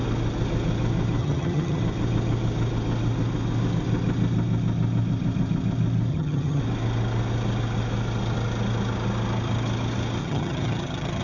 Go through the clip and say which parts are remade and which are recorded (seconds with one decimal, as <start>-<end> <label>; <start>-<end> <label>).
0.0-1.2 recorded; 1.2-1.8 remade; 1.8-6.1 recorded; 6.1-6.6 remade; 6.6-10.2 recorded; 10.2-11.2 remade

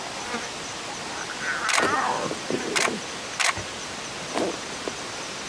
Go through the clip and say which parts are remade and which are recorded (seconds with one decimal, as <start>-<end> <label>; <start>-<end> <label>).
0.0-5.5 recorded

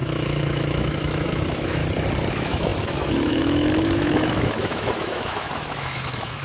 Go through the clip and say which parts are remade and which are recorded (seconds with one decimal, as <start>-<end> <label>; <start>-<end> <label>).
0.0-1.8 remade; 1.8-2.3 recorded; 2.3-6.4 remade

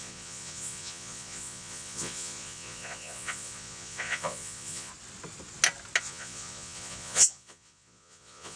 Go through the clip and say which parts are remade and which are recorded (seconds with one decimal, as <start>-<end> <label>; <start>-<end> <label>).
0.0-4.9 remade; 4.9-6.0 recorded; 6.0-8.6 remade

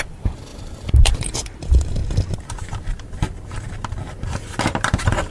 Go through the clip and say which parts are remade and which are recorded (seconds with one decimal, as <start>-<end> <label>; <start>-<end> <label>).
0.0-2.0 remade; 2.0-5.3 recorded